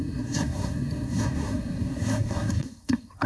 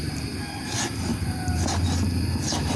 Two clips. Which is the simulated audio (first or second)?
first